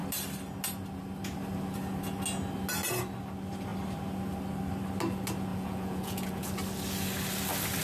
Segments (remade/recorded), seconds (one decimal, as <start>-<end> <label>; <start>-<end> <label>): 0.0-5.5 recorded; 5.5-6.5 remade; 6.5-7.8 recorded